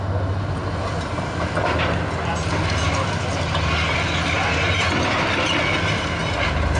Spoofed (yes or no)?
no